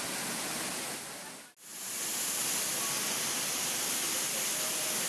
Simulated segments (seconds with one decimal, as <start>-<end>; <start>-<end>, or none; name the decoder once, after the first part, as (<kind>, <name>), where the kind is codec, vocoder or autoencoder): none